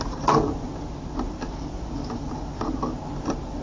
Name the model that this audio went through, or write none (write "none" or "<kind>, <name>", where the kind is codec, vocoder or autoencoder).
none